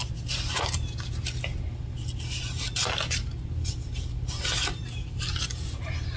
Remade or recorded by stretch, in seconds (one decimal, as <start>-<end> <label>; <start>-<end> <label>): 0.0-6.2 recorded